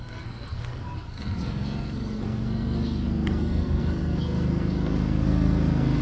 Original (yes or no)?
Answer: no